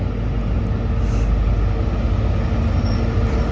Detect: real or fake real